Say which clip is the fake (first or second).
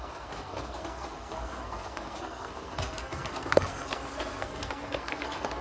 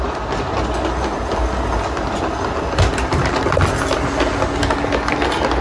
first